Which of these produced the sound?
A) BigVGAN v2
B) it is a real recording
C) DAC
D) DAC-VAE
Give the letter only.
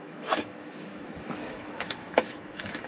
D